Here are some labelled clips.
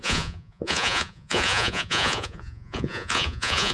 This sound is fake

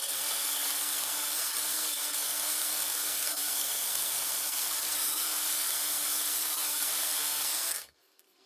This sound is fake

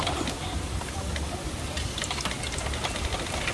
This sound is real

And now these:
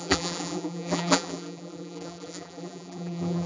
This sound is fake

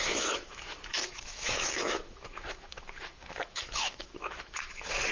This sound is fake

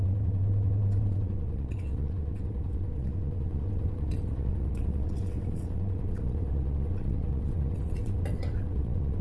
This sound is fake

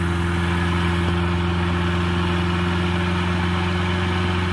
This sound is real